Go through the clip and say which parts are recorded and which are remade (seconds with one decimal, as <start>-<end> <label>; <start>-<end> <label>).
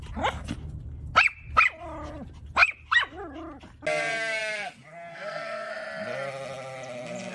0.0-5.1 recorded; 5.1-5.7 remade; 5.7-7.3 recorded